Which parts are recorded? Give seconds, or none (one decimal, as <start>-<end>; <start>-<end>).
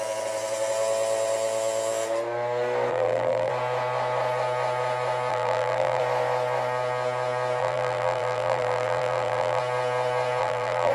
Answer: 0.0-2.9; 3.5-5.3; 6.0-7.6; 9.6-10.4